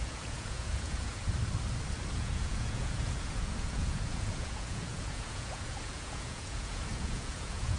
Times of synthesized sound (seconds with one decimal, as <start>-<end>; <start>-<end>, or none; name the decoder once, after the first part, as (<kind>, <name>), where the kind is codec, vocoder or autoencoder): 0.0-1.2 (vocoder, Vocos); 2.1-7.8